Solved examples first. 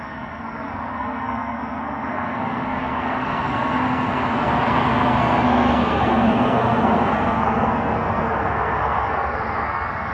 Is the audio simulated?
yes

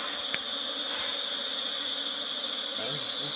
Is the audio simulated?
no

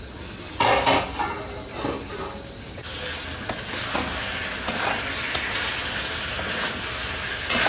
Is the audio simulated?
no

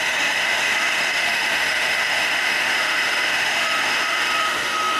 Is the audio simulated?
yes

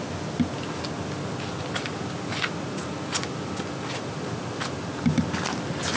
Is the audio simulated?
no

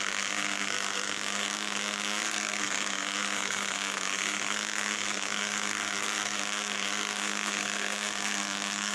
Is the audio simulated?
yes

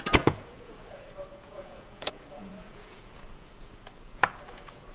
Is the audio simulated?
yes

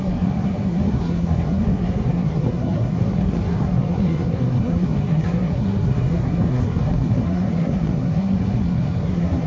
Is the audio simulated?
yes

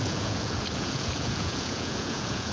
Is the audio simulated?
yes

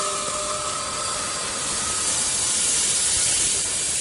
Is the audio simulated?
no